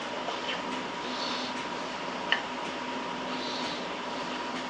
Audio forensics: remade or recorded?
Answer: recorded